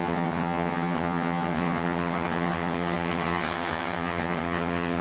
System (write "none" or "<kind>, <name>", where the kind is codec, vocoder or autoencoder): vocoder, HiFi-GAN